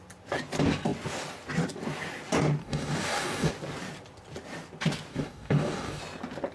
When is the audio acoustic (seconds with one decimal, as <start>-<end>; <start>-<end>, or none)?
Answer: 0.0-2.6; 3.5-5.1; 6.0-6.5